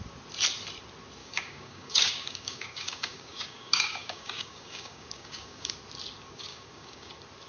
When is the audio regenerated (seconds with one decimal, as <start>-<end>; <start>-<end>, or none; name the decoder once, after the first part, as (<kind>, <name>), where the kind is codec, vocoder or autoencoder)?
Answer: 1.2-5.7 (codec, DAC); 6.5-7.1